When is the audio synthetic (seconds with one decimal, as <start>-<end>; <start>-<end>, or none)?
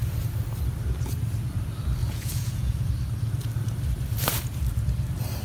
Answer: 2.0-2.9